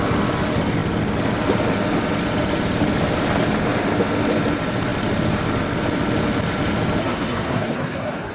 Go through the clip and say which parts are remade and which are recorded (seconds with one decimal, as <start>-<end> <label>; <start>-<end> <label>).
0.0-7.0 recorded; 7.0-8.3 remade

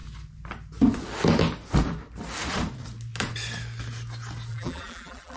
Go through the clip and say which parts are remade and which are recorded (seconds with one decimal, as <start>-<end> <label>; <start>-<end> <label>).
0.0-4.5 recorded; 4.5-5.4 remade

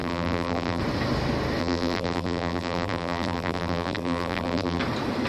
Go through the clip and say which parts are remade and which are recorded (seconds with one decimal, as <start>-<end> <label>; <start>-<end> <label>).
0.0-0.8 remade; 0.8-1.6 recorded; 1.6-4.8 remade; 4.8-5.3 recorded

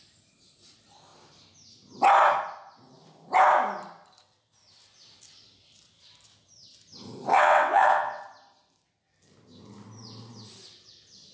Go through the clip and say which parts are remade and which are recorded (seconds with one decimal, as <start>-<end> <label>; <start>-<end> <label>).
0.0-7.3 recorded; 7.3-8.2 remade; 8.2-11.3 recorded

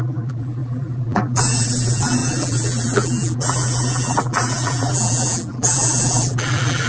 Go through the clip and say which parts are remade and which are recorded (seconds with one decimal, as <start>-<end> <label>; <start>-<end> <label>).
0.0-6.9 remade